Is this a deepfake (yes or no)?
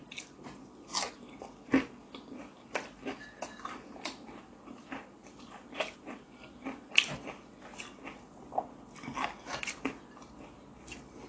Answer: no